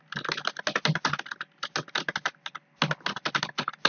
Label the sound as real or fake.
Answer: real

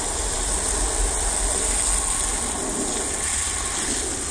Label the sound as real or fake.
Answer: real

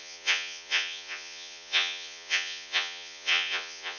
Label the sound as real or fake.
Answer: fake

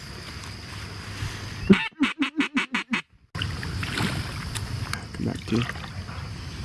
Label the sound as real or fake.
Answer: real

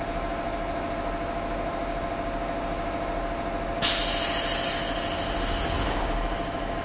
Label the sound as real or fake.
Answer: real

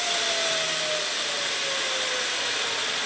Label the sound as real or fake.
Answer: real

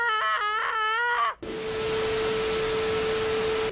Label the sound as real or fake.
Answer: real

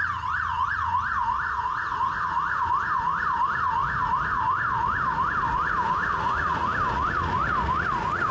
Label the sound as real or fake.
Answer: fake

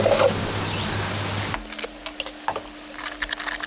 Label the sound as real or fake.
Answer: real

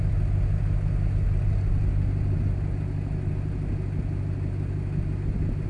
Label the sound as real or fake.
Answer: real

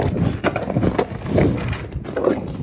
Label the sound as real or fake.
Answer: real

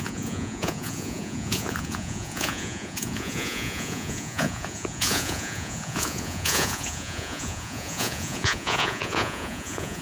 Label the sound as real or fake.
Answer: fake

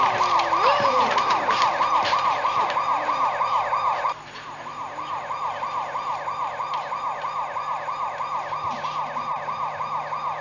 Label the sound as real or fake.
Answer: real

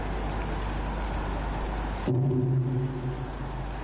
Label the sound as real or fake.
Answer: real